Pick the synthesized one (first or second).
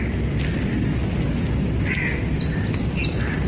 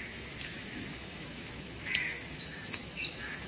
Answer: second